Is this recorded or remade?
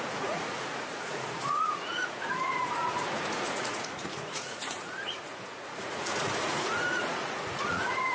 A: remade